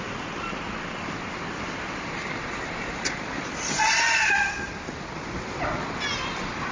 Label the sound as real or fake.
real